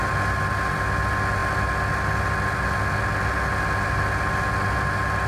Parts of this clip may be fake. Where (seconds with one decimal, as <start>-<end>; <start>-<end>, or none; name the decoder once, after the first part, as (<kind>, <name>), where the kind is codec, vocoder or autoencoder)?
none